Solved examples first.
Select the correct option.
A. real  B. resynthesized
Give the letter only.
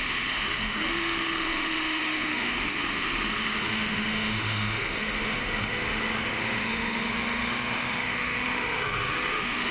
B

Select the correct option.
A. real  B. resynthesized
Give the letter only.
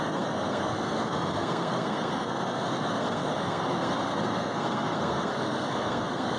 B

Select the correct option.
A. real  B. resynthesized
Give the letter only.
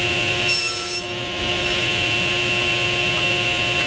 A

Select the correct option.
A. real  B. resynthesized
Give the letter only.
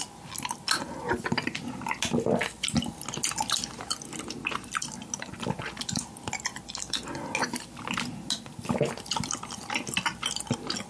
A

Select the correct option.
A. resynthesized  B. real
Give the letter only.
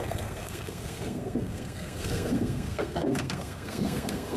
A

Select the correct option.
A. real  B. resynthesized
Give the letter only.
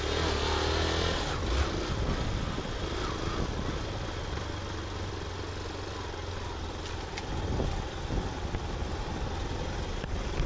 A